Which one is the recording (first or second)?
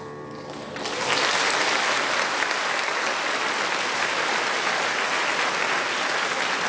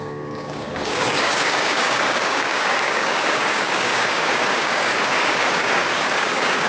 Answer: first